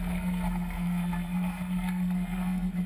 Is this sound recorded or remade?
remade